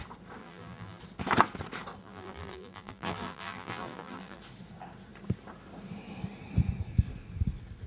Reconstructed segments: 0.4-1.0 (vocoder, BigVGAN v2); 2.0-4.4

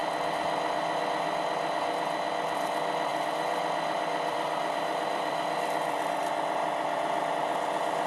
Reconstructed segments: 3.1-5.6 (vocoder, BigVGAN v2); 6.6-7.3

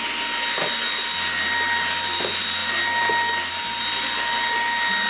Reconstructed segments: none

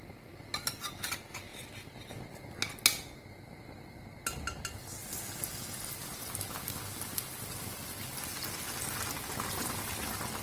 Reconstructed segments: none

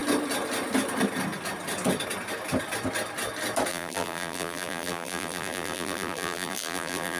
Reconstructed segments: 3.7-7.2 (vocoder, BigVGAN v2)

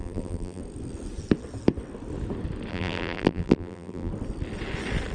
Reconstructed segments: 0.0-0.6 (vocoder, BigVGAN v2); 2.7-4.1

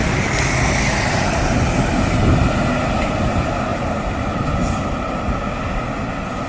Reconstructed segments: 3.7-4.2 (vocoder, BigVGAN v2)